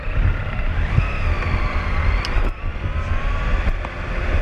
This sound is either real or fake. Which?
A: real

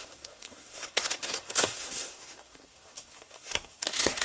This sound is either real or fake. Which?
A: fake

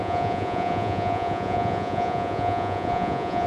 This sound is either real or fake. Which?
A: fake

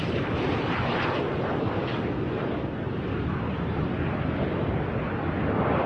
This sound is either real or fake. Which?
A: real